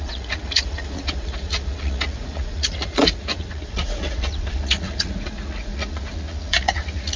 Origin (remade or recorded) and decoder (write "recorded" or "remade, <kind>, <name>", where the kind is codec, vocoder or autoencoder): remade, vocoder, Vocos